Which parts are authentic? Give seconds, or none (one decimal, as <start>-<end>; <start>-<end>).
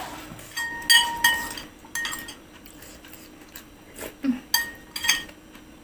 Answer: 0.0-5.8